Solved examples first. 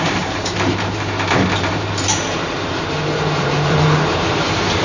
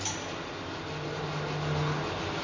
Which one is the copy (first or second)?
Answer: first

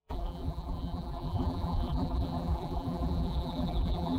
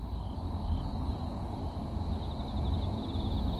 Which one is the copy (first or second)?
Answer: first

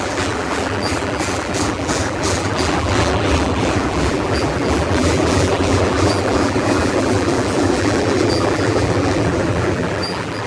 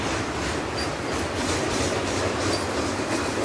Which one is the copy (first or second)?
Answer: first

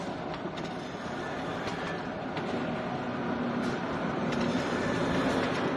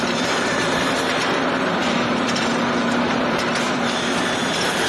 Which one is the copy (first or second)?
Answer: second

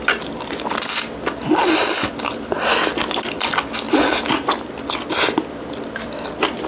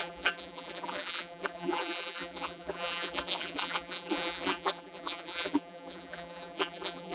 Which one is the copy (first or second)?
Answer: second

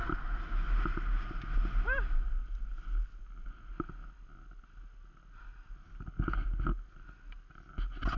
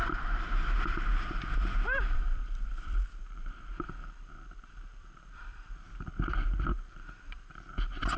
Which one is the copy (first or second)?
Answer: second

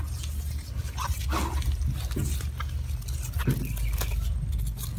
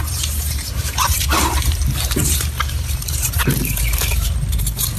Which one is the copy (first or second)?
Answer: second